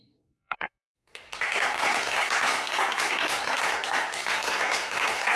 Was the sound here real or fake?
fake